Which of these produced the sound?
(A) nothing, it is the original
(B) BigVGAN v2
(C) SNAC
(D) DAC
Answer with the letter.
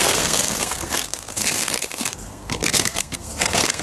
C